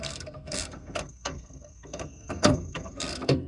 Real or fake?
fake